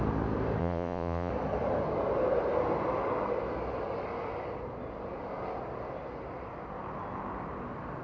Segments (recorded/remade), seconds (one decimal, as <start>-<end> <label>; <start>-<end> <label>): 0.0-0.6 recorded; 0.6-1.3 remade; 1.3-8.0 recorded